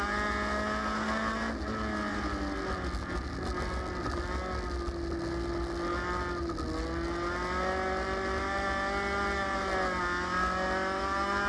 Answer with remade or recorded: recorded